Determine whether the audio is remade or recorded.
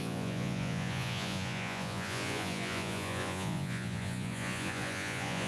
remade